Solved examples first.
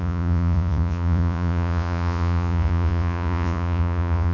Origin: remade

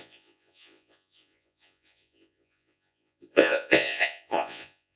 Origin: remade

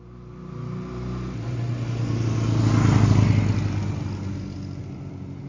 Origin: recorded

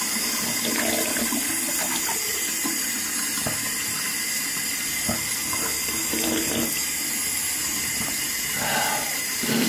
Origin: recorded